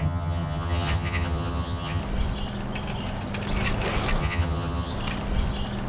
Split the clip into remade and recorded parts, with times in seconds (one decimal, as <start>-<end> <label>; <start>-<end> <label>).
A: 0.0-2.0 remade; 2.0-4.2 recorded; 4.2-4.9 remade; 4.9-5.9 recorded